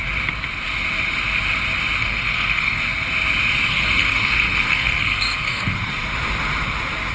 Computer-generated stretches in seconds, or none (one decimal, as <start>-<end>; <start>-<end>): 2.0-2.8; 3.7-5.9